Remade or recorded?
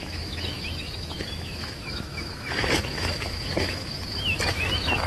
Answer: remade